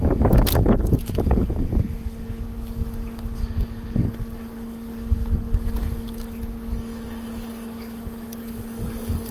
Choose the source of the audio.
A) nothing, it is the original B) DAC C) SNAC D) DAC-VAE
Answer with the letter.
B